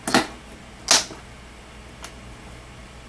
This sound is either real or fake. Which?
real